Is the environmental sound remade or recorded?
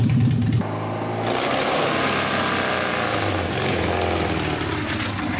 recorded